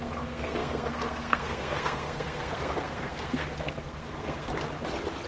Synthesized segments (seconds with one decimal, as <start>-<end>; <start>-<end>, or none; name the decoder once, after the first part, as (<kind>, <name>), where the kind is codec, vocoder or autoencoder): 0.0-4.5 (codec, SNAC)